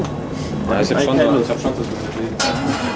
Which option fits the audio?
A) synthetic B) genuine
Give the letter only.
B